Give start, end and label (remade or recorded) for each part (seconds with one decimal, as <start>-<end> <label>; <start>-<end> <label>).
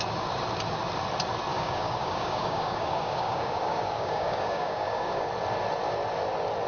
0.0-1.5 recorded; 1.5-5.3 remade; 5.3-6.7 recorded